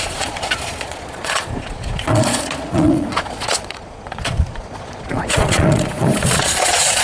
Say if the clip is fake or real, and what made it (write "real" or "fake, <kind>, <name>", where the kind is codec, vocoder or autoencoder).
fake, vocoder, Vocos